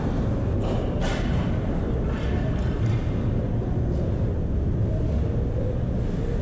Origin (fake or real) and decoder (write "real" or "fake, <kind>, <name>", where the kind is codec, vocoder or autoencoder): real